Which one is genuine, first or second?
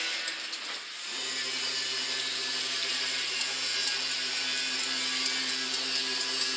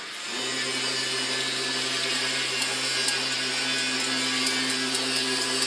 second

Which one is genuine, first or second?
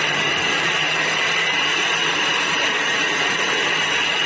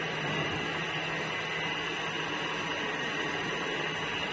second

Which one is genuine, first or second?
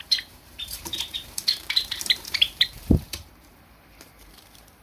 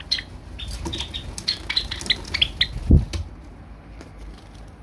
second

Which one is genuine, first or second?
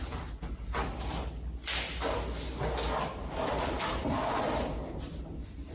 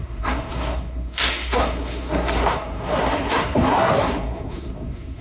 first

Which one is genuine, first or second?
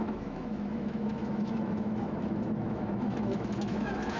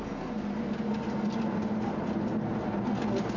second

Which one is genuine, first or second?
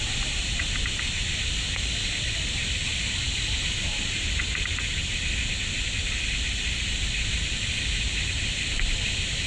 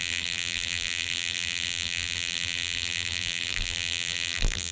first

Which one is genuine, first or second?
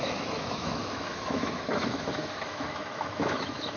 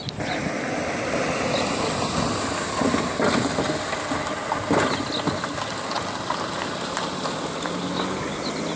second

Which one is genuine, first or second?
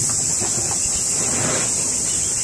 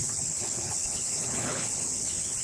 first